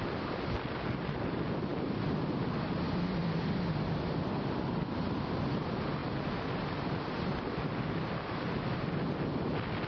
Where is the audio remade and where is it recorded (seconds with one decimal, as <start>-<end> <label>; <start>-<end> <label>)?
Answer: 0.0-9.9 recorded